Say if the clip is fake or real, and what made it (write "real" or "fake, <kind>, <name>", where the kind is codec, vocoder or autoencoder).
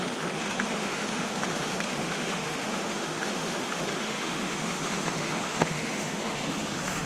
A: fake, autoencoder, DAC-VAE